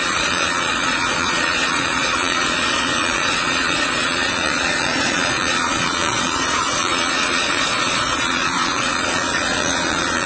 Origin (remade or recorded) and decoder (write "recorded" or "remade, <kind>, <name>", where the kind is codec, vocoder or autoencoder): remade, vocoder, Vocos